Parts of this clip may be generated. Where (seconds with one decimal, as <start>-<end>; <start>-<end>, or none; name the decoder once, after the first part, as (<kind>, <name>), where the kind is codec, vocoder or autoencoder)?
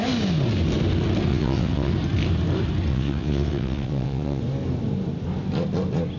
1.3-1.9 (vocoder, WaveNeXt); 2.9-4.4